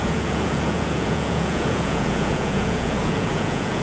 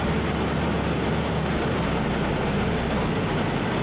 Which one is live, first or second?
second